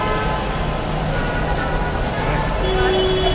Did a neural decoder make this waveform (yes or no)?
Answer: no